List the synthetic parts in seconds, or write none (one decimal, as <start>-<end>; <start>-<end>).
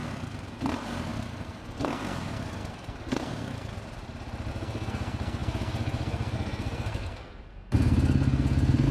0.0-3.7; 4.5-8.9